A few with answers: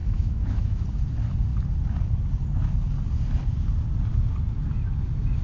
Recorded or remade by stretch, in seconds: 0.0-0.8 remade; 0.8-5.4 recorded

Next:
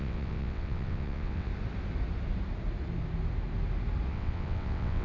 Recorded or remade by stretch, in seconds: 0.0-1.5 remade; 1.5-4.1 recorded; 4.1-5.0 remade

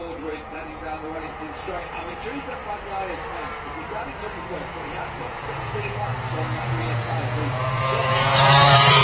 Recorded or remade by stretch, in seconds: 0.0-2.6 remade; 2.6-4.7 recorded; 4.7-6.1 remade; 6.1-6.6 recorded; 6.6-9.0 remade

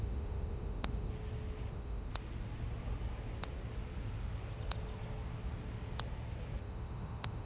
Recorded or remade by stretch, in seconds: 0.0-1.1 remade; 1.1-1.7 recorded; 1.7-2.1 remade; 2.1-6.6 recorded; 6.6-7.5 remade

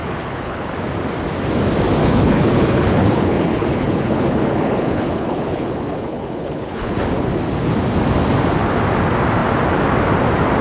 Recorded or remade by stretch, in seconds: 0.0-0.7 remade; 0.7-2.0 recorded; 2.0-7.0 remade; 7.0-10.6 recorded

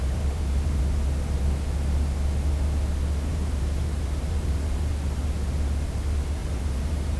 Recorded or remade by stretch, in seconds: 0.0-0.8 remade; 0.8-3.3 recorded; 3.3-4.9 remade; 4.9-6.4 recorded; 6.4-7.2 remade